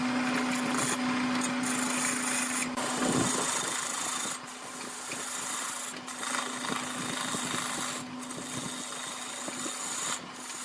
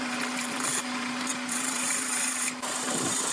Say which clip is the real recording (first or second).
first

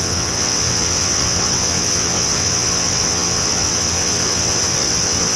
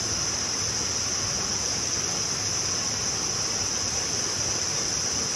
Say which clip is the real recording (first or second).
second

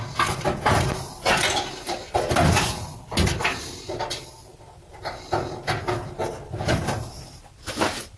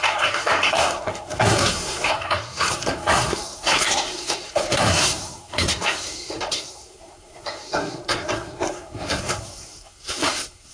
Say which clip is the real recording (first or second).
first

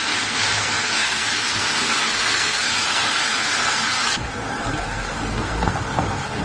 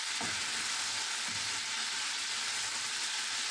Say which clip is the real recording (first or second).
second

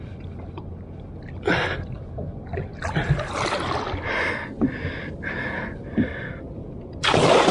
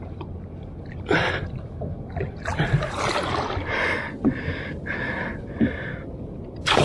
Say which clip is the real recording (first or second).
first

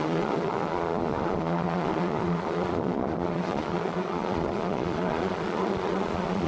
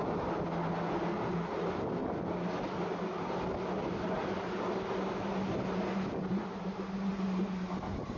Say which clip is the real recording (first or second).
second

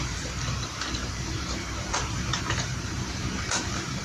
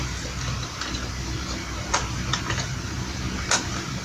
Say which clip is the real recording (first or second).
second